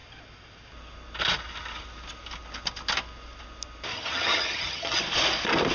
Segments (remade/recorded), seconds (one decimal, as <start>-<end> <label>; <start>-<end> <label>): 0.0-3.9 recorded; 3.9-5.0 remade; 5.0-5.7 recorded